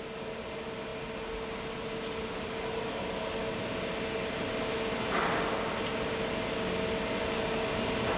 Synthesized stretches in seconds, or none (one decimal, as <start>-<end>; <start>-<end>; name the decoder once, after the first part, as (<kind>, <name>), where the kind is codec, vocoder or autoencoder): none